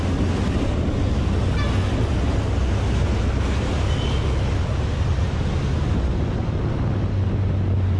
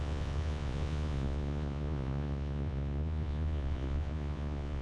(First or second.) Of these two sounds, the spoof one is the second